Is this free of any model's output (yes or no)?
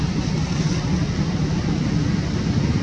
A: yes